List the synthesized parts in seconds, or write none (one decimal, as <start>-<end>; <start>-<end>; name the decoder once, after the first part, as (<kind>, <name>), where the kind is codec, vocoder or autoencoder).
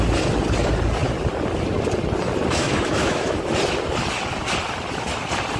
2.6-3.4 (autoencoder, DAC-VAE)